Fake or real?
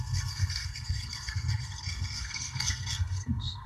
fake